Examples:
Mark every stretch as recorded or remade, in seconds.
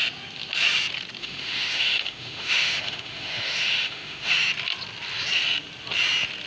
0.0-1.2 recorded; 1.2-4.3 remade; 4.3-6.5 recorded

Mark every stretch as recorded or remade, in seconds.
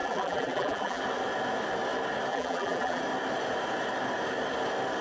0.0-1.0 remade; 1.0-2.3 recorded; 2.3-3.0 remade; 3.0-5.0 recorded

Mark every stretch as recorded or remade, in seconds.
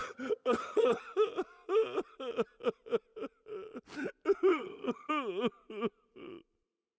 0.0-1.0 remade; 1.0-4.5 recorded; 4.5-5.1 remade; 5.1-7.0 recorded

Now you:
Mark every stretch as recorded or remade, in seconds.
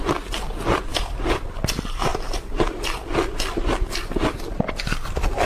0.0-0.9 recorded; 0.9-1.6 remade; 1.6-2.1 recorded; 2.1-5.5 remade